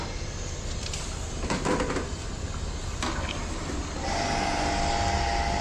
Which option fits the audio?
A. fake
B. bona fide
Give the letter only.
B